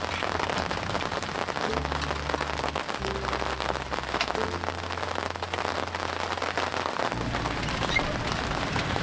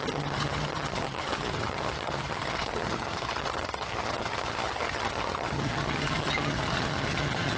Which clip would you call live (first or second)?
first